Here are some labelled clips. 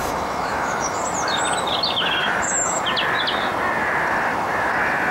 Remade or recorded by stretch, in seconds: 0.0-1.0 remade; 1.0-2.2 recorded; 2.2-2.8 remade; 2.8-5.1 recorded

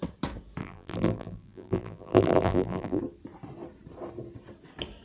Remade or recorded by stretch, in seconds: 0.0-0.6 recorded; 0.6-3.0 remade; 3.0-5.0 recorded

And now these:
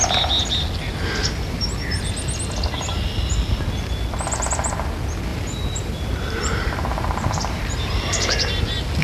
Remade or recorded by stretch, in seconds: 0.0-1.2 recorded; 1.2-2.0 remade; 2.0-5.3 recorded; 5.3-8.5 remade; 8.5-9.0 recorded

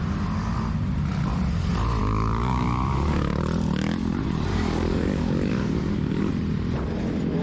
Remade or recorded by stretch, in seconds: 0.0-2.0 recorded; 2.0-3.4 remade; 3.4-4.5 recorded; 4.5-6.3 remade; 6.3-7.4 recorded